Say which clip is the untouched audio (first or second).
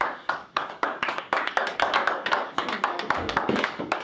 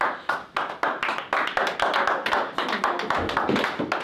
second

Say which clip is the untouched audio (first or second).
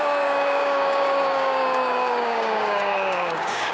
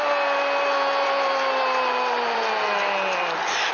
second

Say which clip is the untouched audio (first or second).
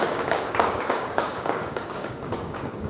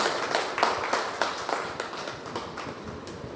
second